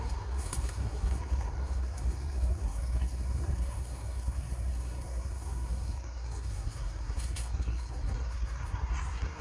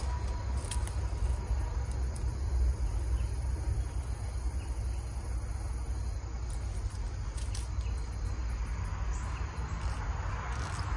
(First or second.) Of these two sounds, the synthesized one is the first